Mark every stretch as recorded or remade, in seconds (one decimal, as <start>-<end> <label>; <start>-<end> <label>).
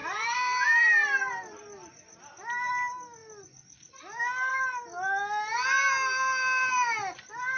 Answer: 0.0-2.7 remade; 2.7-7.6 recorded